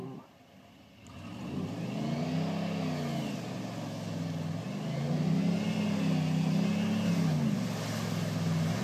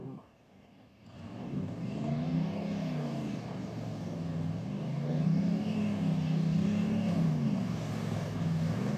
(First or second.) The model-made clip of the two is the second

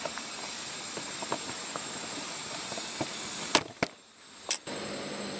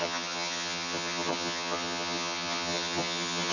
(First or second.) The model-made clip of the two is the second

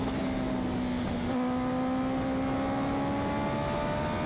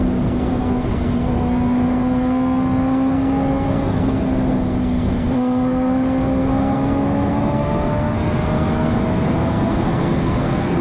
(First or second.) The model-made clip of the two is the second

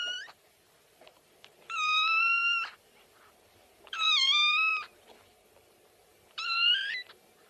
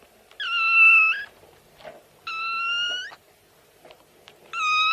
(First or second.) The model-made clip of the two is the first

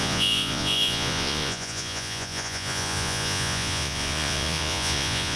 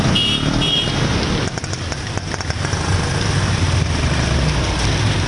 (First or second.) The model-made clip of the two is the first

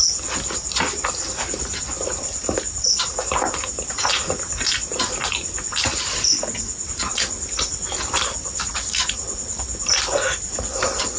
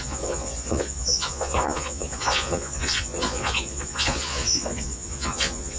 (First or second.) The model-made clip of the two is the second